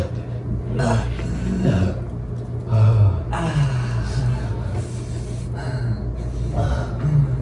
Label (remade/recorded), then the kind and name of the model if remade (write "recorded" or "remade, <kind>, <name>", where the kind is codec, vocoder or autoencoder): recorded